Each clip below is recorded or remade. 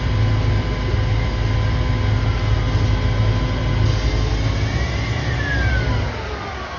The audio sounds recorded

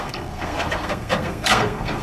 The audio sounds remade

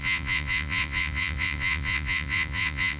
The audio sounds remade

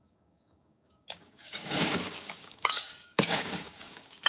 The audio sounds remade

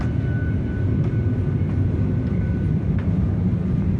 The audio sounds recorded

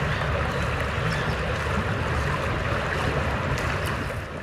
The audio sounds recorded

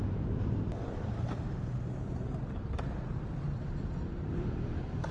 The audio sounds remade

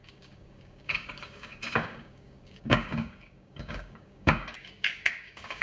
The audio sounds remade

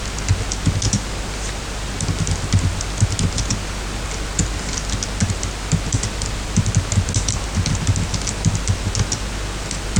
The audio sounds recorded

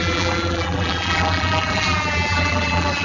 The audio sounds remade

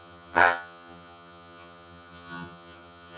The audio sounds remade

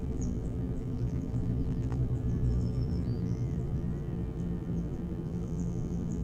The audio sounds remade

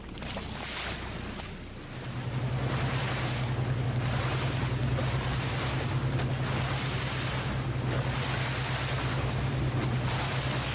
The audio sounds recorded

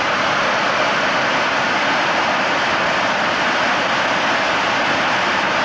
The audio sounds recorded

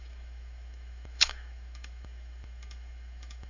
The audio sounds remade